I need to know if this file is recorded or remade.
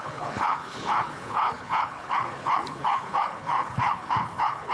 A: remade